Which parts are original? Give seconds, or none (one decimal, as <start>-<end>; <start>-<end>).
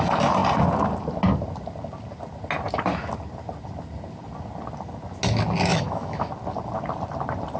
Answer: 0.0-5.7; 6.3-7.6